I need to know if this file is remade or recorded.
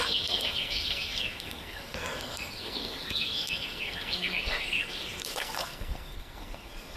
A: remade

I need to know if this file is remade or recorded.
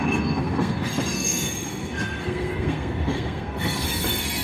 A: remade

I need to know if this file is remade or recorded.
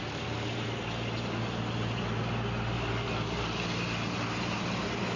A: recorded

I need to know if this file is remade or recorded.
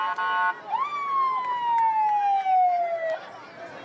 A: recorded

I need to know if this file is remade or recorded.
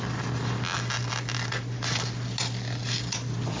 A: recorded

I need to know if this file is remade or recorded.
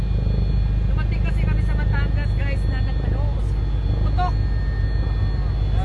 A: recorded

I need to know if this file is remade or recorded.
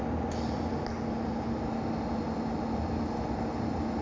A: recorded